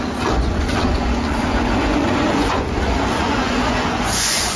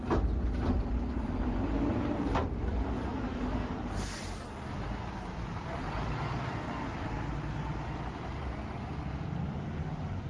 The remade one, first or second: first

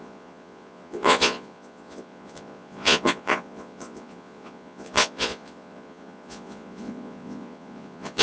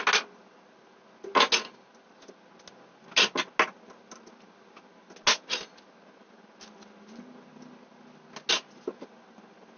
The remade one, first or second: first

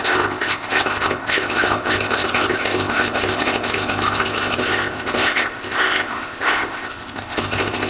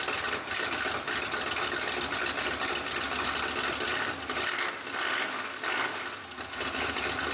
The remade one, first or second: first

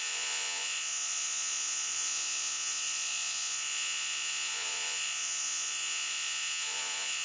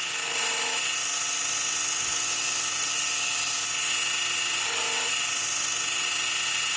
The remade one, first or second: first